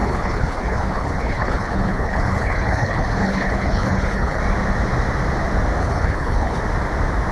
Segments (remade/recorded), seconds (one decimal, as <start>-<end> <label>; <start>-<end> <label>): 0.0-4.4 remade; 4.4-5.8 recorded; 5.8-6.6 remade; 6.6-7.3 recorded